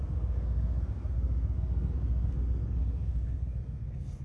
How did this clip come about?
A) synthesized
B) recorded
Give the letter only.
A